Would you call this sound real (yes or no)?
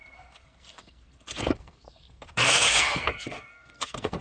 no